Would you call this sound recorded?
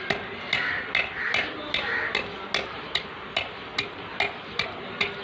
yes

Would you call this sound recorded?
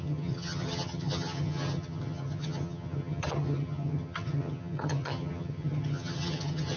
no